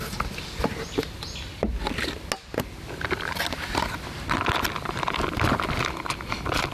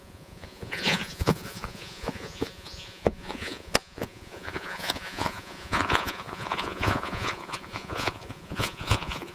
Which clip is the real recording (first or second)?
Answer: first